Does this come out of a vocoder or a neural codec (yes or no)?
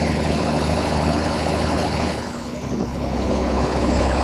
yes